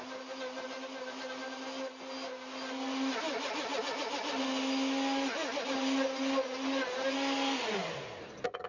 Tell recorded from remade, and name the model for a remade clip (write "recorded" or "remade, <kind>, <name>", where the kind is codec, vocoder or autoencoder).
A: recorded